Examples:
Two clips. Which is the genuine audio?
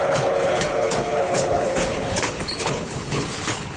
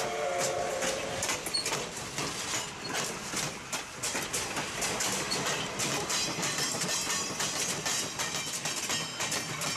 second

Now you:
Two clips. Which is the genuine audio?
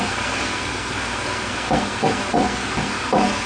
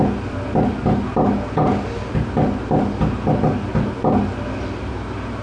second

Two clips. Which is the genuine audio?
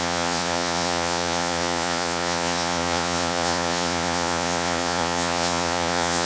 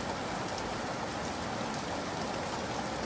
second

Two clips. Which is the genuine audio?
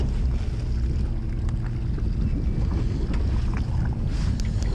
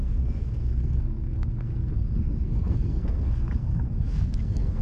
first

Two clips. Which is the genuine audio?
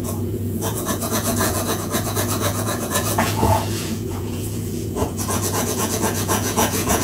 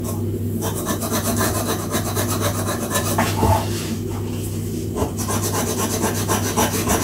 second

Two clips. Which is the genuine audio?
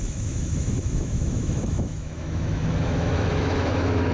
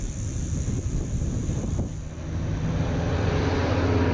second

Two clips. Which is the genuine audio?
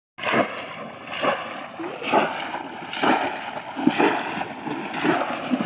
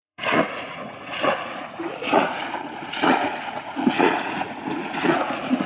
first